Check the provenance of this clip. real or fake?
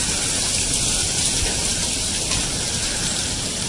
real